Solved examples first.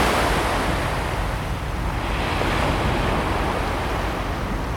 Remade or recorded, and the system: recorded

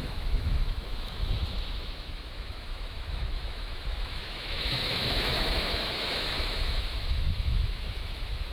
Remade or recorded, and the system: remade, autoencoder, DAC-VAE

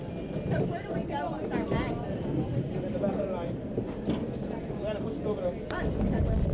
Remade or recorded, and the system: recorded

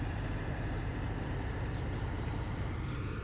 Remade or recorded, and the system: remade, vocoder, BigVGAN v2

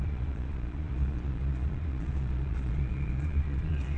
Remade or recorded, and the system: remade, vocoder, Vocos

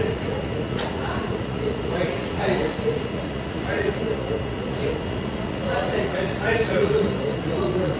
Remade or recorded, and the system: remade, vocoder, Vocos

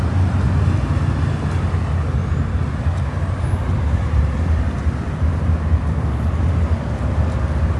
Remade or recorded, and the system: recorded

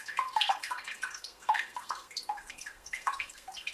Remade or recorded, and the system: remade, codec, SNAC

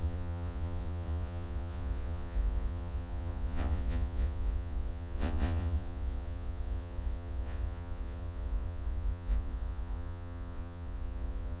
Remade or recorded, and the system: remade, vocoder, Vocos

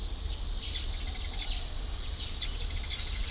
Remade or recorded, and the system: recorded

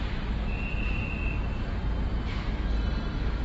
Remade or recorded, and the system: recorded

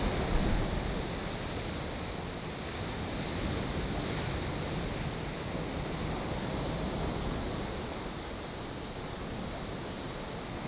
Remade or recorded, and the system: recorded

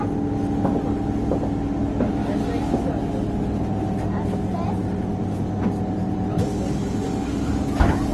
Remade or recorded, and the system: recorded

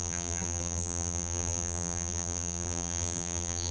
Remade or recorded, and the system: remade, vocoder, BigVGAN v2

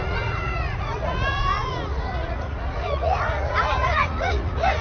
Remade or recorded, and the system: remade, vocoder, Vocos